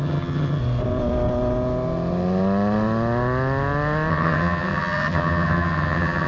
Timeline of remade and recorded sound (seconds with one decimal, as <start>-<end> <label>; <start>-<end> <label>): 0.0-0.6 remade; 0.6-4.1 recorded; 4.1-6.3 remade